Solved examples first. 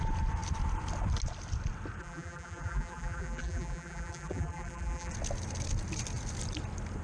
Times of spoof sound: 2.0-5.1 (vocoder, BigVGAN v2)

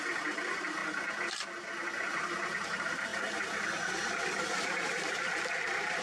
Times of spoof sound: 0.0-0.8 (vocoder, BigVGAN v2); 2.1-3.1; 3.9-6.0

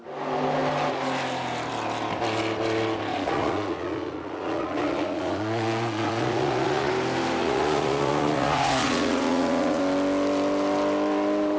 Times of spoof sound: 3.1-6.9 (vocoder, Vocos); 7.4-9.8